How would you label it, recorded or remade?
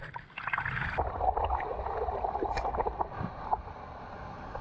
recorded